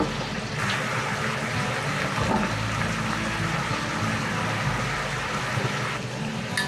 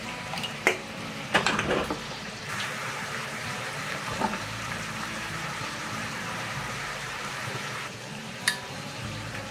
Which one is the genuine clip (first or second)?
first